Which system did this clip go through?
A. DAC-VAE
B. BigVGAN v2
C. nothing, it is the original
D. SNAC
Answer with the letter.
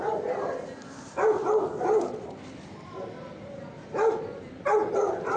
B